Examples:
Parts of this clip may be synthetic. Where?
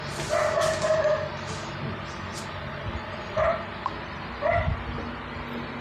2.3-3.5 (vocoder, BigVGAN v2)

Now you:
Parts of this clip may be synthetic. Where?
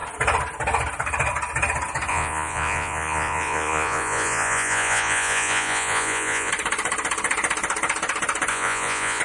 2.1-6.5 (vocoder, Vocos); 8.5-9.2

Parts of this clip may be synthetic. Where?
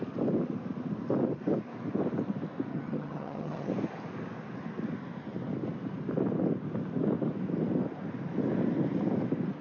2.7-3.7 (vocoder, HiFi-GAN)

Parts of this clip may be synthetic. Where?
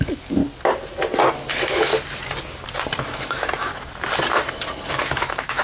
0.0-0.4 (autoencoder, DAC-VAE); 1.3-1.9; 3.0-3.7; 4.9-5.6